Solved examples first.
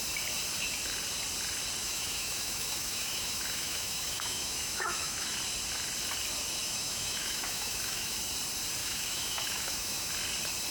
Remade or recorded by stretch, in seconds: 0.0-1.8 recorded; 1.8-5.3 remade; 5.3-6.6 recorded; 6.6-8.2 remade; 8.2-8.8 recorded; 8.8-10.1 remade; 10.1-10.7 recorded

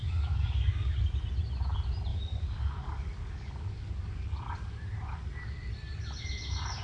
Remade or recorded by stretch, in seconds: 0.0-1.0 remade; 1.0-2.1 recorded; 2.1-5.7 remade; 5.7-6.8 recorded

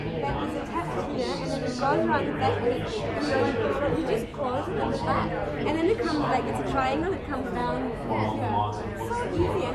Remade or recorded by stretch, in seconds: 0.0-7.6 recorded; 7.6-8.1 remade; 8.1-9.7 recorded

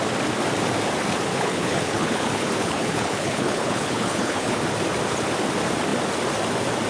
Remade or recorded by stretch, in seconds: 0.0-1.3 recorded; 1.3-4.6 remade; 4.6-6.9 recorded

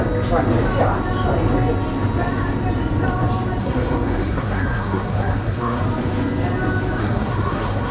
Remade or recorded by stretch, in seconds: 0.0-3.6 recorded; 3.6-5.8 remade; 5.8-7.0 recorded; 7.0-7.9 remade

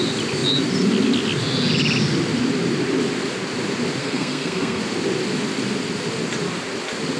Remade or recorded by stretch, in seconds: 0.0-4.0 recorded; 4.0-4.8 remade; 4.8-7.2 recorded